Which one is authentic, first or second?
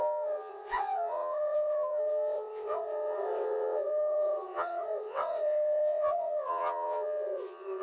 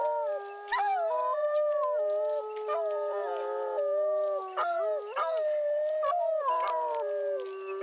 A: second